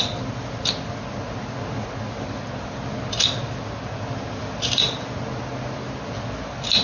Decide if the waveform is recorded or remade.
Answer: recorded